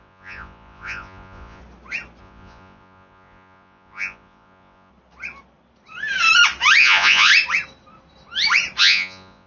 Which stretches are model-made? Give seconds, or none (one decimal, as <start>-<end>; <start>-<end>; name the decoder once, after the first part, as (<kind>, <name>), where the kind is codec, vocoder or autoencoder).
0.0-1.6 (vocoder, Vocos); 2.2-4.9; 6.8-7.3; 8.8-9.5